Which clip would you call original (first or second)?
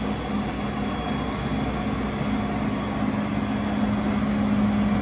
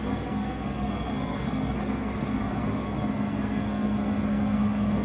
first